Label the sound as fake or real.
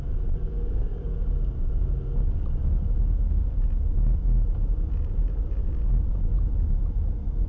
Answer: real